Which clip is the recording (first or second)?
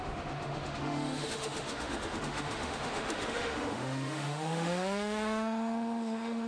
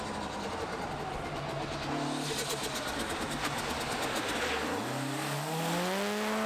second